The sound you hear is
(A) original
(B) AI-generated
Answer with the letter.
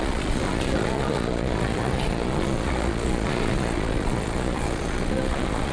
B